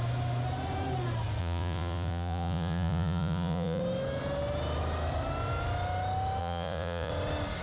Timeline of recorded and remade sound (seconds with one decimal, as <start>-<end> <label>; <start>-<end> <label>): 0.0-1.4 recorded; 1.4-3.8 remade; 3.8-6.4 recorded; 6.4-7.1 remade; 7.1-7.6 recorded